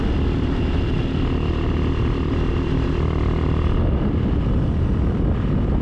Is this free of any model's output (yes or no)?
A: yes